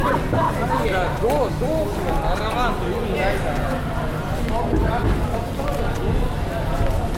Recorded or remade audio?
recorded